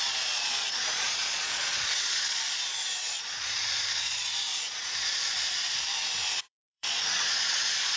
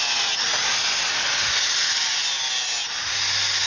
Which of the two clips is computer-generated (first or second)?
first